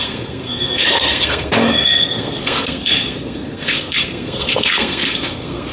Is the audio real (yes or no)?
no